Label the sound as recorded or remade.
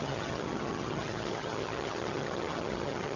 remade